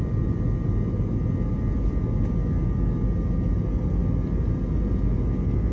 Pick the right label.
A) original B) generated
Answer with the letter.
A